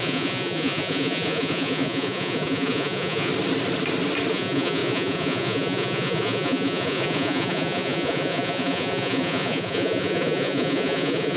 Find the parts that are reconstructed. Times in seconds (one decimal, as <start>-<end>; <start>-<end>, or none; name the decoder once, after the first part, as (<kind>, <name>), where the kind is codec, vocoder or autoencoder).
0.0-3.3 (vocoder, Vocos); 4.3-11.4